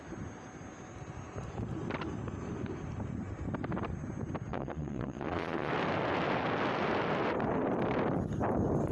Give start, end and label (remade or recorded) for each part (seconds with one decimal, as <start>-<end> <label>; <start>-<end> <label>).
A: 0.0-4.5 recorded; 4.5-5.7 remade; 5.7-8.9 recorded